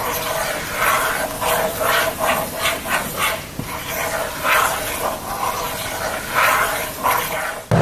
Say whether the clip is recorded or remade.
recorded